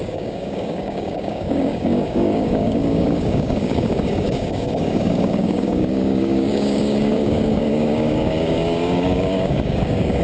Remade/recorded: remade